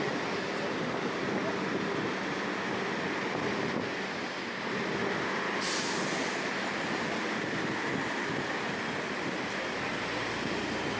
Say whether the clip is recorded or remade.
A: recorded